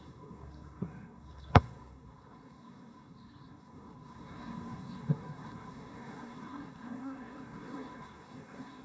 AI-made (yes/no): yes